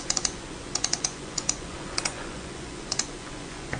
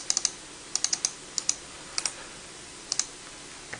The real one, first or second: second